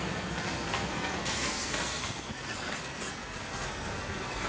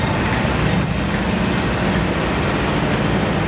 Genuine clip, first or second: second